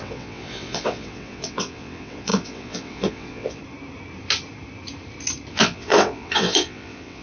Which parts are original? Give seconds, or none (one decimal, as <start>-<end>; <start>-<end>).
3.6-5.5

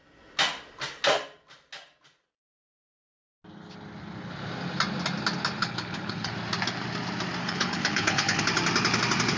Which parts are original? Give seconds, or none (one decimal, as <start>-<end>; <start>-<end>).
0.0-5.6; 6.3-7.4; 8.4-9.4